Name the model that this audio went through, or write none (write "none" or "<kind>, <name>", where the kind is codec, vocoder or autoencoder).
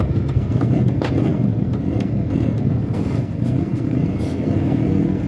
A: codec, SNAC